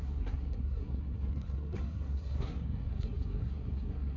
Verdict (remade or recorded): remade